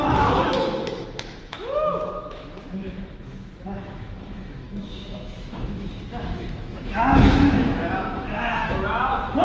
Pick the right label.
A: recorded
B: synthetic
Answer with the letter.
B